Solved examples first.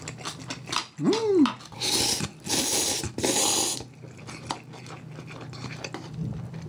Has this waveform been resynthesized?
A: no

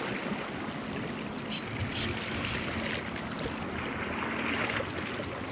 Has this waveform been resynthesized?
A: no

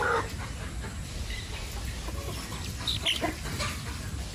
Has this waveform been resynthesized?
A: no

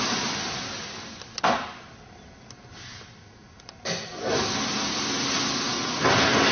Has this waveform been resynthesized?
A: no